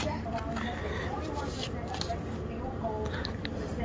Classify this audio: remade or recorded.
recorded